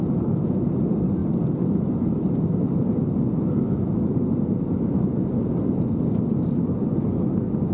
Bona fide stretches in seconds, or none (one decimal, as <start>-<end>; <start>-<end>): 0.0-7.7